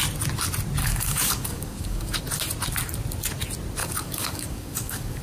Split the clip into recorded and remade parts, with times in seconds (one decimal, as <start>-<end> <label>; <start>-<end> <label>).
0.0-0.8 recorded; 0.8-2.2 remade; 2.2-3.8 recorded; 3.8-5.2 remade

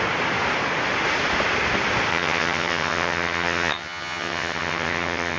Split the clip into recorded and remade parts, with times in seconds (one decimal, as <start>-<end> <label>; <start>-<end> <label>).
0.0-2.1 recorded; 2.1-5.4 remade